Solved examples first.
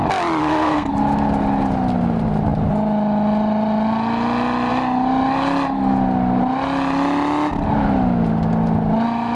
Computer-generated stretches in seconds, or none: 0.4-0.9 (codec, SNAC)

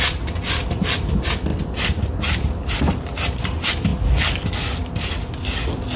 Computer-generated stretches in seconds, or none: none